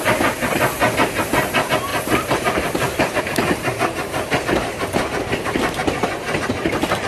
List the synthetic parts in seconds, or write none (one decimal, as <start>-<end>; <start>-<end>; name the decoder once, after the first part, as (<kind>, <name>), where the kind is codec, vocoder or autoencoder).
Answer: 1.9-3.2 (vocoder, BigVGAN v2)